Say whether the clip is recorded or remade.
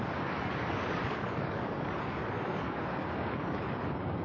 remade